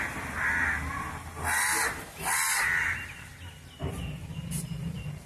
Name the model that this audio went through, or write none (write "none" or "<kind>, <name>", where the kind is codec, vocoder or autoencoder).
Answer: none